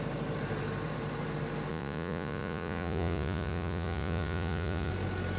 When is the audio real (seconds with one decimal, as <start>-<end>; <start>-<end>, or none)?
0.0-1.7; 4.9-5.4